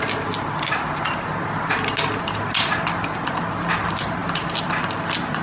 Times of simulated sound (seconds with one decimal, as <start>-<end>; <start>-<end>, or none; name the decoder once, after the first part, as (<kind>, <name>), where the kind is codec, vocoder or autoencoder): none